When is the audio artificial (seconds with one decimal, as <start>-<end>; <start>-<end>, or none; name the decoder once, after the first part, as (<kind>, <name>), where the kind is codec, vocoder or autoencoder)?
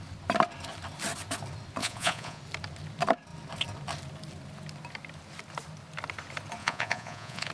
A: 1.8-2.4 (vocoder, Vocos); 6.6-7.5